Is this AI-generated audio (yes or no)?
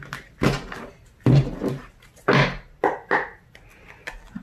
no